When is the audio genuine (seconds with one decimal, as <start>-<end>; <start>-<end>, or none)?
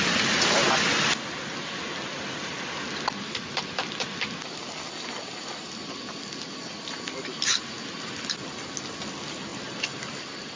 0.0-10.6